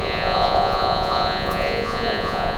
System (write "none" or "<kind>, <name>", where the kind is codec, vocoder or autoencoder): vocoder, Vocos